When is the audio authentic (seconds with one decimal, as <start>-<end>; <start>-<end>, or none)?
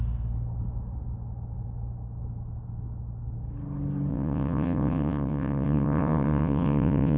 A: 0.0-4.1